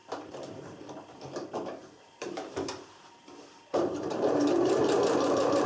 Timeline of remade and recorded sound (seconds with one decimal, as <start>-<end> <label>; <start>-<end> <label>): 0.0-1.3 remade; 1.3-1.8 recorded; 1.8-4.8 remade; 4.8-5.7 recorded